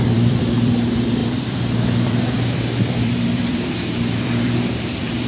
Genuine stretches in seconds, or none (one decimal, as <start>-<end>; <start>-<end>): none